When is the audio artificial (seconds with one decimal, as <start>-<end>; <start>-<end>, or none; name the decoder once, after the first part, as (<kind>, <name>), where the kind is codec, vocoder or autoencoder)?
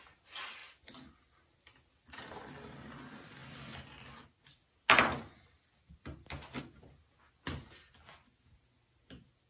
0.6-2.2 (vocoder, BigVGAN v2)